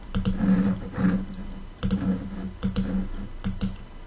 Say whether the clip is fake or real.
real